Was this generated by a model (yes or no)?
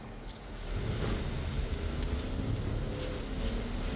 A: no